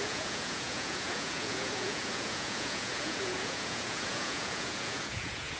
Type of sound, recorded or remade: remade